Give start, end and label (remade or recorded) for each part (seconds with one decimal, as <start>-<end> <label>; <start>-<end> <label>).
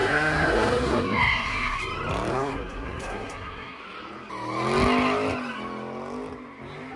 0.0-1.8 remade; 1.8-2.3 recorded; 2.3-3.8 remade; 3.8-7.0 recorded